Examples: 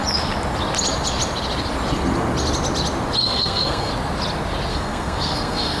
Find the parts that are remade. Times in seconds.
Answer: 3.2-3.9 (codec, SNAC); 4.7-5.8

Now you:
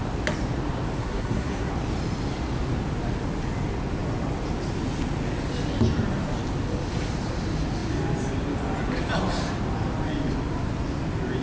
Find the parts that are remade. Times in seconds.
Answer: 1.0-1.7 (codec, SNAC)

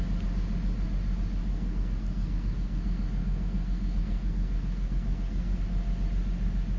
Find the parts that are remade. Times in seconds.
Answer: 1.5-5.6 (codec, SNAC)